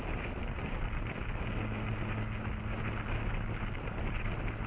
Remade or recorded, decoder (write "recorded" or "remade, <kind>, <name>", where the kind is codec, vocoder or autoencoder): recorded